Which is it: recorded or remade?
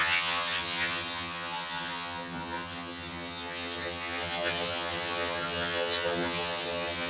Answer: remade